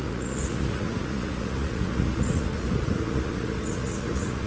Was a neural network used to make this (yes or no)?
yes